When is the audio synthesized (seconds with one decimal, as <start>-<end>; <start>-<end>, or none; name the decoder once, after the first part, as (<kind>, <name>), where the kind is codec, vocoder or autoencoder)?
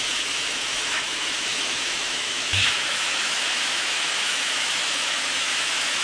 0.0-6.0 (autoencoder, DAC-VAE)